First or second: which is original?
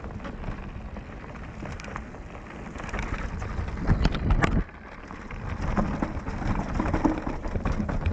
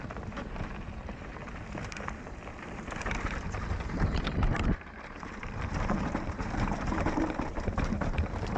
first